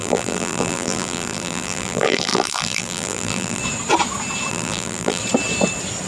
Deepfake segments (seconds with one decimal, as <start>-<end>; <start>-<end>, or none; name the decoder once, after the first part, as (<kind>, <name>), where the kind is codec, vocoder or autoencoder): 0.0-3.6 (vocoder, BigVGAN v2); 4.5-5.2